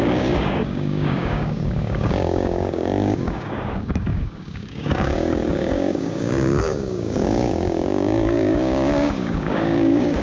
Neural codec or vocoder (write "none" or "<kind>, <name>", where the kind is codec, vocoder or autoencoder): codec, DAC